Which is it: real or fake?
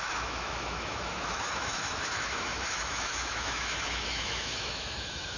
fake